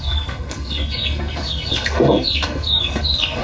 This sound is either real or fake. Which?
fake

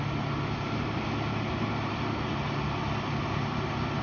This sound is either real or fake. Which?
real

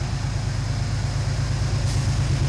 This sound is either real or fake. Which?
real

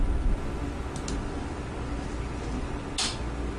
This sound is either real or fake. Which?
real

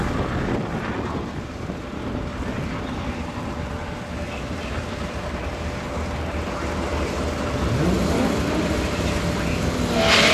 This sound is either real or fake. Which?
real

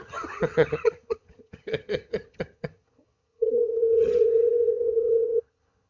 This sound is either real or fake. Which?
fake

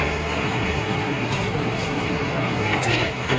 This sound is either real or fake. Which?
fake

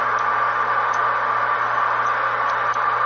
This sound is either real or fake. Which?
real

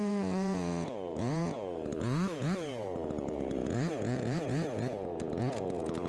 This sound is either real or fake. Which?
fake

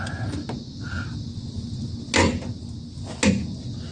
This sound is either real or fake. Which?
real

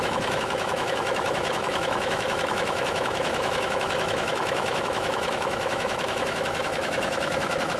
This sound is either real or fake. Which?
fake